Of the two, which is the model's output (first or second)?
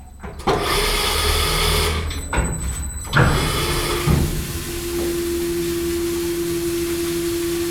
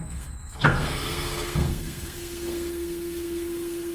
second